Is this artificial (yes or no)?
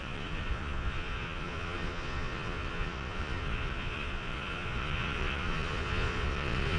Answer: yes